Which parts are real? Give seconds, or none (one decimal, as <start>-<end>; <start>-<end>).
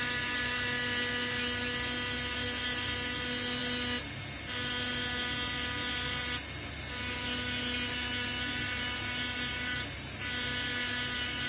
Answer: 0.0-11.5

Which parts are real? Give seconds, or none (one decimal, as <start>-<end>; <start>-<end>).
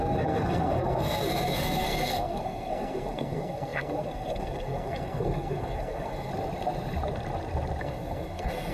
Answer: 6.3-7.8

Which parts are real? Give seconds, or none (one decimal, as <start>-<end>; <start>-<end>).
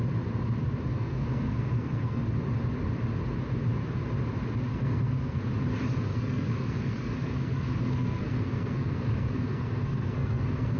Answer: 0.0-0.9; 2.2-4.7; 5.4-6.1